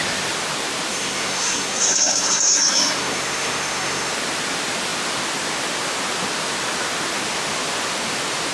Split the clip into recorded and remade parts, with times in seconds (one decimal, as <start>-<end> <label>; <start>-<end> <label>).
0.0-0.9 recorded; 0.9-4.1 remade; 4.1-8.5 recorded